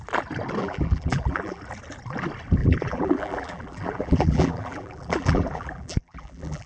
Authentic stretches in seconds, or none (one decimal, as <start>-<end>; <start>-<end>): 0.0-0.6; 1.6-2.6